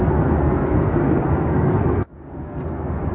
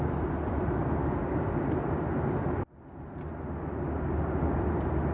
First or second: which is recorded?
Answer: second